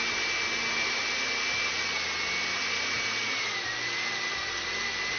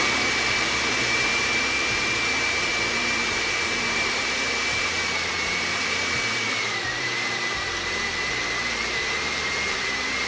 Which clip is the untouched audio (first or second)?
first